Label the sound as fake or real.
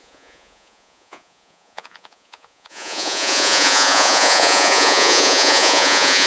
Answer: fake